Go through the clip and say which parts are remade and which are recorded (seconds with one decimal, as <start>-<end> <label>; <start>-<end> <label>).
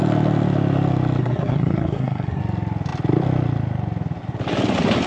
0.0-1.2 recorded; 1.2-2.4 remade; 2.4-5.1 recorded